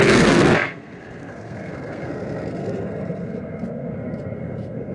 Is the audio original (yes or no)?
no